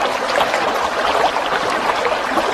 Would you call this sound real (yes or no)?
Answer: yes